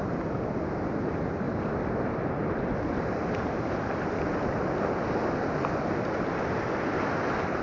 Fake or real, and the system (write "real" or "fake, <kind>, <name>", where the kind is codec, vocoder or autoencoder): real